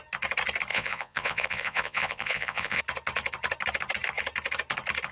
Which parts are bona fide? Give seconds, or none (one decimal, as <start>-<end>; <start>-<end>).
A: 0.0-0.7; 2.8-5.1